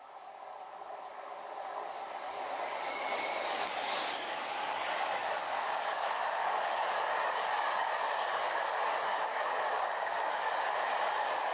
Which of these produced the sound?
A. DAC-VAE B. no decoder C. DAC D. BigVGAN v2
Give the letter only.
C